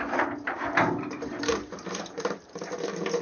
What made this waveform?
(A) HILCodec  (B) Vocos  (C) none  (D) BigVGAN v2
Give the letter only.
D